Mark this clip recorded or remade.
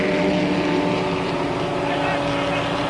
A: recorded